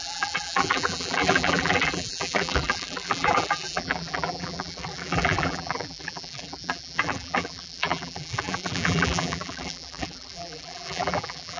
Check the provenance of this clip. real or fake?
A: fake